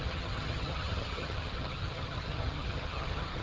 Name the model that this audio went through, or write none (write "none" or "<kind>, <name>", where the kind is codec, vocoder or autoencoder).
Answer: vocoder, HiFi-GAN